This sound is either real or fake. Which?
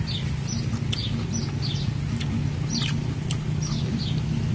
real